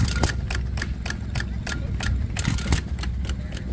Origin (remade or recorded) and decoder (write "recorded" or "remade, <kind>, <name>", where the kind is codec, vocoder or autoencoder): recorded